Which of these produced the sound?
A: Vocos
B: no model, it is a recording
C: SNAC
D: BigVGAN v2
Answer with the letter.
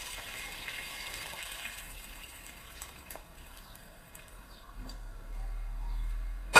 C